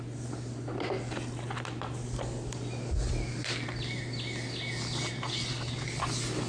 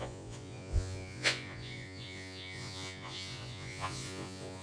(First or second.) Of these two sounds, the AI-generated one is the second